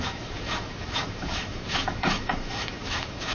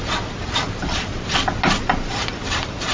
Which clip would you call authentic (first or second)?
second